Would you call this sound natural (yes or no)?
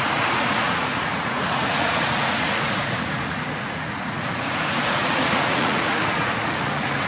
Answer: no